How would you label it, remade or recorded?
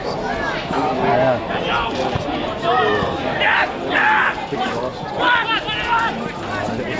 recorded